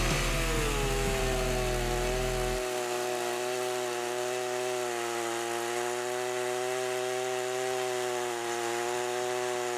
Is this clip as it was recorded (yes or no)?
yes